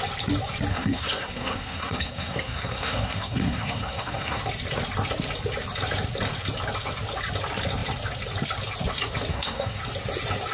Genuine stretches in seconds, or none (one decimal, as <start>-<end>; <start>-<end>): 0.0-0.7; 4.4-9.3; 9.8-10.5